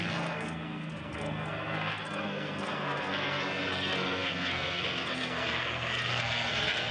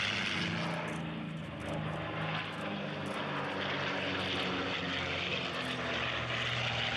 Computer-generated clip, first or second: first